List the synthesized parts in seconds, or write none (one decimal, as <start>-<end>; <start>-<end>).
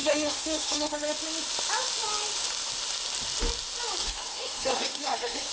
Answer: 0.0-1.1; 4.0-5.5